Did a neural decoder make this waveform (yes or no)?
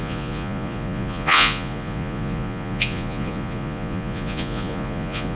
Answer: yes